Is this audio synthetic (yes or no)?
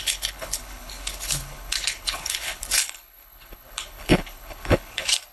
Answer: yes